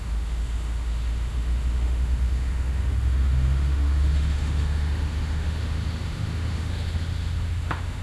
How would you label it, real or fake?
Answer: fake